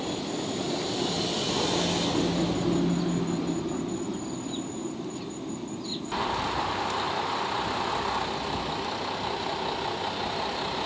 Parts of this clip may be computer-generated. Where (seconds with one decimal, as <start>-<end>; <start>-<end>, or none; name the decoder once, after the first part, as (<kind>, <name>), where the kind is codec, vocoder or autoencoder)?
5.9-7.9 (vocoder, BigVGAN v2)